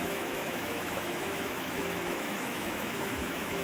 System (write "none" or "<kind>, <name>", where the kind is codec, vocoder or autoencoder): autoencoder, DAC-VAE